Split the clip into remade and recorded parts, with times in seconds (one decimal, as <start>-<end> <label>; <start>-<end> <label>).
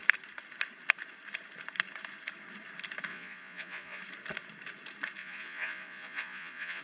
0.0-3.1 recorded; 3.1-4.0 remade; 4.0-5.2 recorded; 5.2-6.8 remade